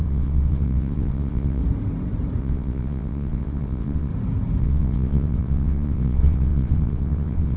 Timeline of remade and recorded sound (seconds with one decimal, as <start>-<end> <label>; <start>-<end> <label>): 0.0-1.6 remade; 1.6-2.4 recorded; 2.4-4.1 remade; 4.1-4.6 recorded; 4.6-7.6 remade